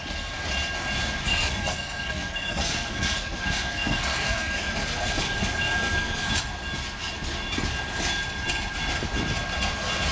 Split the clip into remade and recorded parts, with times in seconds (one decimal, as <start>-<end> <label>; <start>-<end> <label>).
0.0-1.2 recorded; 1.2-6.3 remade; 6.3-10.1 recorded